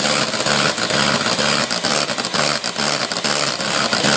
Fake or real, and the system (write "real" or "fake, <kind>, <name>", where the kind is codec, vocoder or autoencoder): real